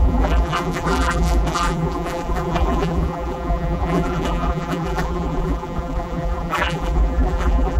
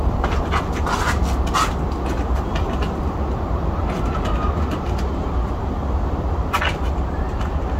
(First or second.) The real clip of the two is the second